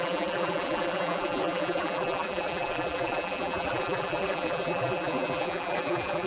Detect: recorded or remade remade